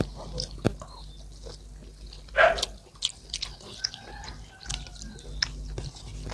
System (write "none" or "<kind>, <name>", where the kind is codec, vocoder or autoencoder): none